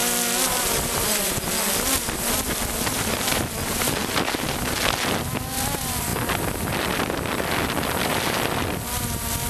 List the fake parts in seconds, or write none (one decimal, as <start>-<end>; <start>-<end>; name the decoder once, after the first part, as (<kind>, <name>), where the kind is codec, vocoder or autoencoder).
0.5-4.0 (vocoder, BigVGAN v2); 5.4-9.5